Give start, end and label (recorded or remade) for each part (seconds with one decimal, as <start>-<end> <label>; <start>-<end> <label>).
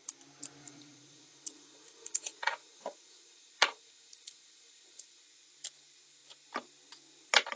0.0-0.6 recorded; 0.6-5.2 remade; 5.2-7.6 recorded